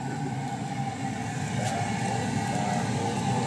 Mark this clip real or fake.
real